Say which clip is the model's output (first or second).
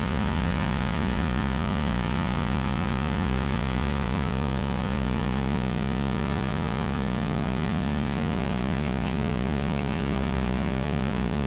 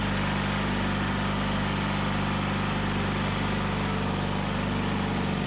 first